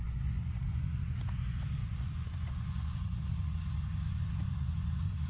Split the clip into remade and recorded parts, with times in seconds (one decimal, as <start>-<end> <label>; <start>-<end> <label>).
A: 0.0-5.3 remade